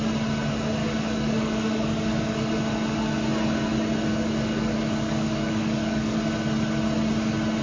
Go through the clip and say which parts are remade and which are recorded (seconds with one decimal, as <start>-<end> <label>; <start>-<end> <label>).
0.0-0.8 recorded; 0.8-2.5 remade; 2.5-4.1 recorded; 4.1-6.3 remade; 6.3-7.6 recorded